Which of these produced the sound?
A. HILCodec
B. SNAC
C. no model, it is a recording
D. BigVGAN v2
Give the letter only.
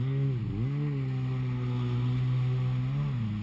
C